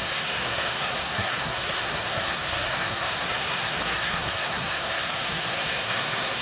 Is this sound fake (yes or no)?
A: yes